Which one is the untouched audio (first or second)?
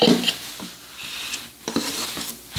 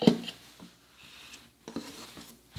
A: second